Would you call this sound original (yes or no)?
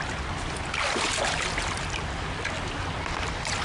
yes